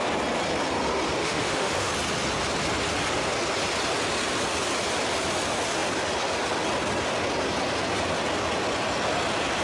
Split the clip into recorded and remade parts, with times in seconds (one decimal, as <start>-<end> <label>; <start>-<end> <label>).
0.0-1.2 recorded; 1.2-1.9 remade; 1.9-9.6 recorded